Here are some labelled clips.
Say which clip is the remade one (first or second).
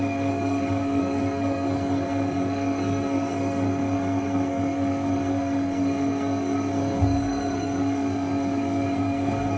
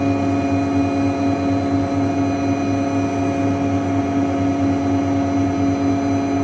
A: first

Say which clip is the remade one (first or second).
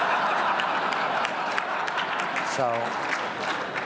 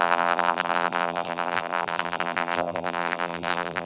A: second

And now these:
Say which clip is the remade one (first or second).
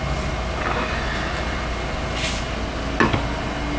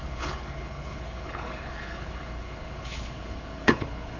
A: second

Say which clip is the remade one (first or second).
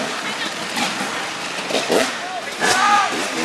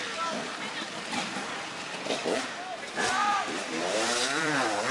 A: second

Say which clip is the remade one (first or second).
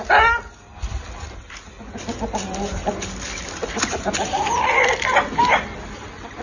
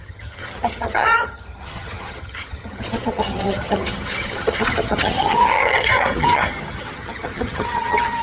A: second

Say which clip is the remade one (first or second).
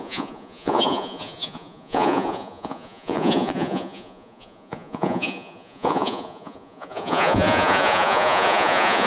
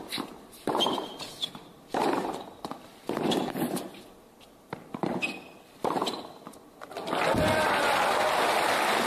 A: first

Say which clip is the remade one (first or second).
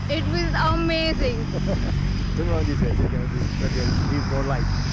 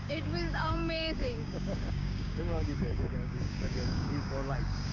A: second